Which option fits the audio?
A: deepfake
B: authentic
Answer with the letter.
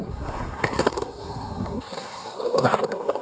A